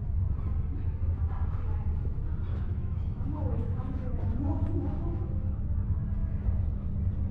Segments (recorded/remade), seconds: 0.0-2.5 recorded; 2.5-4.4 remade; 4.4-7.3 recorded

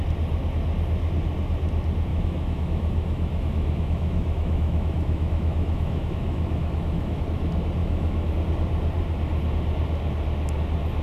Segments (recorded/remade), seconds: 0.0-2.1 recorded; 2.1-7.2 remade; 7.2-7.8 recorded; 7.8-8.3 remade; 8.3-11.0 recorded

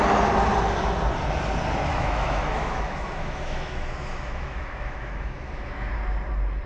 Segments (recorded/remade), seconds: 0.0-1.9 recorded; 1.9-5.9 remade; 5.9-6.7 recorded

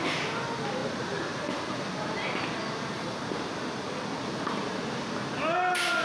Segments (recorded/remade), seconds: 0.0-6.0 recorded

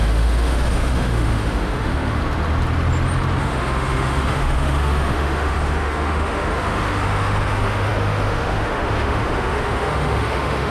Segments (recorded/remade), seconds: 0.0-2.2 remade; 2.2-3.4 recorded; 3.4-10.7 remade

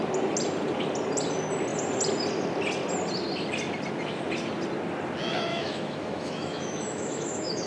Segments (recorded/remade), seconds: 0.0-5.5 recorded; 5.5-7.7 remade

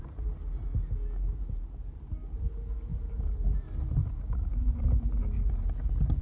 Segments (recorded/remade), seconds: 0.0-6.2 recorded

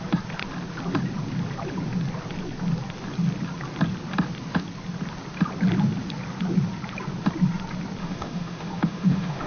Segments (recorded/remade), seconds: 0.0-8.0 recorded; 8.0-9.5 remade